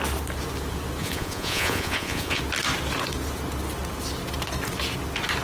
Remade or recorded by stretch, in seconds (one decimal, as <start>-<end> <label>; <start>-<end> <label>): 0.0-1.0 recorded; 1.0-2.4 remade; 2.4-5.4 recorded